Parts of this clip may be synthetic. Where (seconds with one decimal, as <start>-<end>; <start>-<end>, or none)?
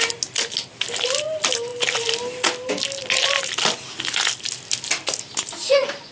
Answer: none